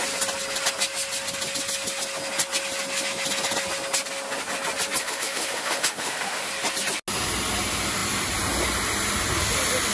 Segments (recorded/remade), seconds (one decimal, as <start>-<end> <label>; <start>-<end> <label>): 0.0-5.0 recorded; 5.0-6.5 remade; 6.5-9.9 recorded